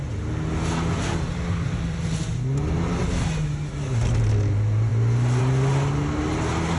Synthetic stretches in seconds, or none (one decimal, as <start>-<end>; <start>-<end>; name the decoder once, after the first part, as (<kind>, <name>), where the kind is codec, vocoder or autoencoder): none